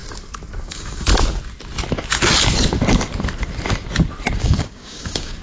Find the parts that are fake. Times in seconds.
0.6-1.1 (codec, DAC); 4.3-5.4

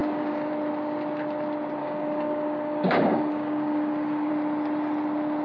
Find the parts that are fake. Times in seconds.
0.0-0.5 (codec, DAC); 1.8-4.3

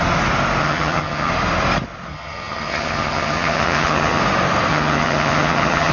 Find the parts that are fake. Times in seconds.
0.6-1.3 (vocoder, HiFi-GAN); 2.1-4.2; 4.7-5.9

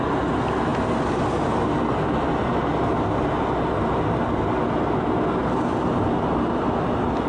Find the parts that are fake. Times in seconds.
none

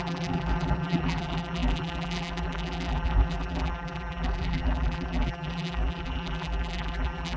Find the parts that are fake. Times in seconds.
0.0-7.4 (vocoder, BigVGAN v2)

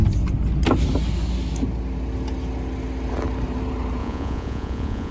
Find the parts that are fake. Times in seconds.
4.0-5.1 (vocoder, Vocos)

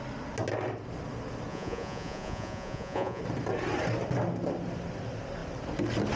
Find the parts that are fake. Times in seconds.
1.5-3.2 (vocoder, Vocos)

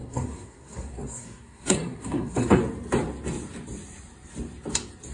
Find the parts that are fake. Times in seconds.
0.0-2.6 (codec, SNAC)